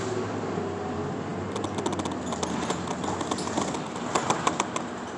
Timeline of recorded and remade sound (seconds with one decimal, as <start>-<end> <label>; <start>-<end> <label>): 0.0-5.2 recorded